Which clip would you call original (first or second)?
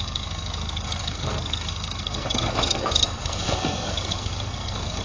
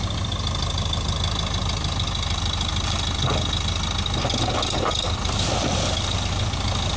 second